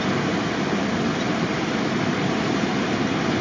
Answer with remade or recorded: recorded